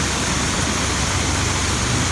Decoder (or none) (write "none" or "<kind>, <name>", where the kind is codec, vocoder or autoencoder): none